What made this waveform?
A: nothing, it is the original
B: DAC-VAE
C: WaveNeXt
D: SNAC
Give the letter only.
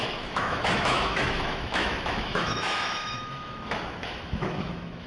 B